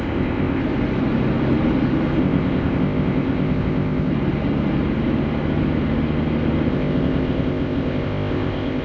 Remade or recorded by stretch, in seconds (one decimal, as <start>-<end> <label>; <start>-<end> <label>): 0.0-0.6 remade; 0.6-2.2 recorded; 2.2-4.1 remade; 4.1-6.7 recorded; 6.7-8.8 remade

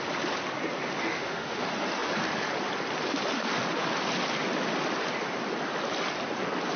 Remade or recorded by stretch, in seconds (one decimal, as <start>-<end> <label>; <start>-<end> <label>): 0.0-1.1 recorded; 1.1-1.6 remade; 1.6-6.8 recorded

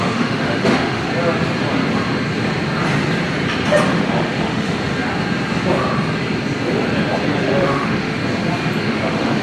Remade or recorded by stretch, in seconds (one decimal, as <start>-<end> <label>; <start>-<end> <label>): 0.0-1.1 remade; 1.1-3.9 recorded; 3.9-4.9 remade; 4.9-7.4 recorded; 7.4-8.2 remade; 8.2-8.8 recorded; 8.8-9.4 remade

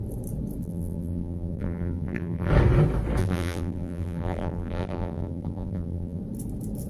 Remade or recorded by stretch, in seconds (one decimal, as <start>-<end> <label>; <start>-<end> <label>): 0.0-0.6 recorded; 0.6-2.5 remade; 2.5-3.2 recorded; 3.2-6.2 remade; 6.2-6.9 recorded

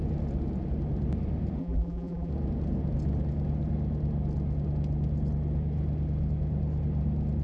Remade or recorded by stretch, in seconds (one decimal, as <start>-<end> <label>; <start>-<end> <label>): 0.0-1.6 recorded; 1.6-2.3 remade; 2.3-7.4 recorded